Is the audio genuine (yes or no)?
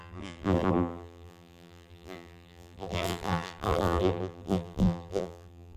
no